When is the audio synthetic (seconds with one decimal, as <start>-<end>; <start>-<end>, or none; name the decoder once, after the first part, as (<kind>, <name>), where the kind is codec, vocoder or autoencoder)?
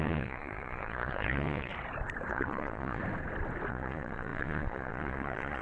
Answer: 0.0-1.7 (vocoder, Vocos); 2.3-3.0; 3.7-5.6